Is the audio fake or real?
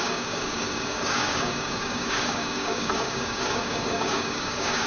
fake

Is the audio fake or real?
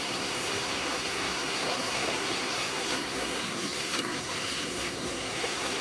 fake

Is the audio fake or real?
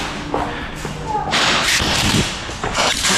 real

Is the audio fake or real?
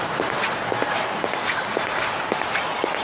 real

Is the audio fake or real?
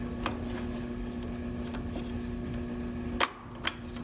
real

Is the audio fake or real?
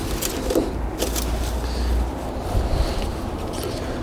real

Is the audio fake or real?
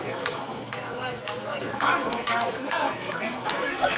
fake